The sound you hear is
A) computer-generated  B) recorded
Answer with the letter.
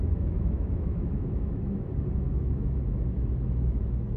A